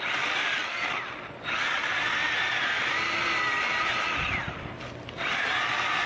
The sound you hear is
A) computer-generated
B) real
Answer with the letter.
B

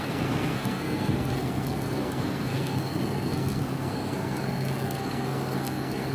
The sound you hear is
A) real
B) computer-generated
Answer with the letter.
B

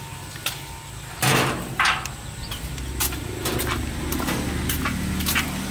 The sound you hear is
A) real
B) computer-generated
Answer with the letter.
A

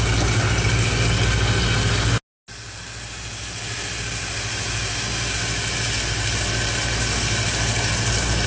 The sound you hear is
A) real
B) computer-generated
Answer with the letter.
A